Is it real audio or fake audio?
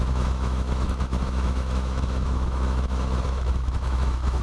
fake